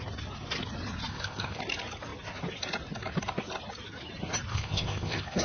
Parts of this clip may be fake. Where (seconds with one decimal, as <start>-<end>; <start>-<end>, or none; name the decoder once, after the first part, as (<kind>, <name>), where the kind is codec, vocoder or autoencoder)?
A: 1.1-1.6 (codec, ZipCodec); 4.5-5.4